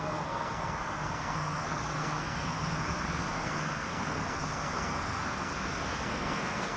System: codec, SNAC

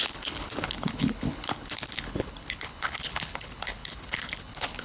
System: codec, HILCodec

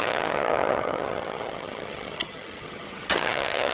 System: vocoder, HiFi-GAN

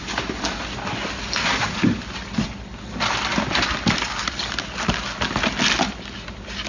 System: none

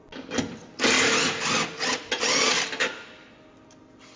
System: none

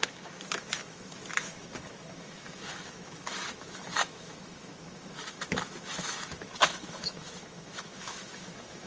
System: autoencoder, DAC-VAE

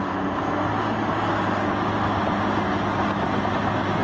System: none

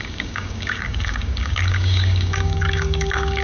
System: codec, DAC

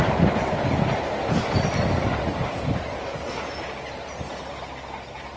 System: none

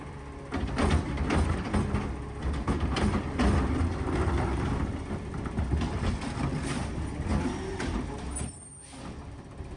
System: none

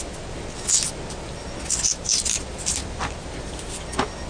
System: none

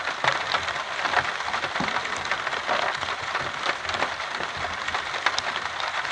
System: none